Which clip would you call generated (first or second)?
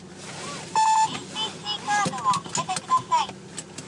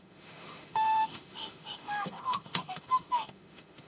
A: second